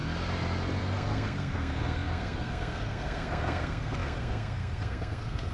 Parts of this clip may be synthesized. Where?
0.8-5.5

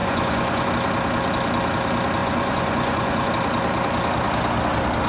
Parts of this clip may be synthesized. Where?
0.0-0.7; 2.2-3.3

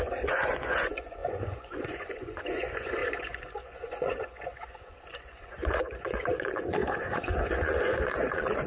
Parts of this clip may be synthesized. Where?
0.0-8.7

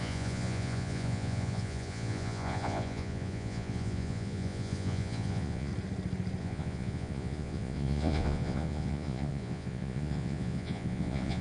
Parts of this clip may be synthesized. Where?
0.0-5.7; 6.4-11.4

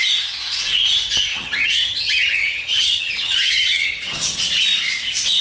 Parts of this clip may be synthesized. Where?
1.3-4.4